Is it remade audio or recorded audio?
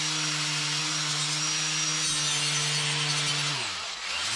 recorded